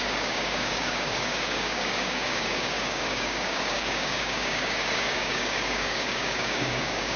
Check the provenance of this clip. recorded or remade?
remade